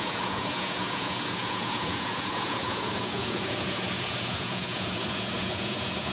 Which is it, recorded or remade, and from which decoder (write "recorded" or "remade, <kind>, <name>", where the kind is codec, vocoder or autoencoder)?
remade, vocoder, Vocos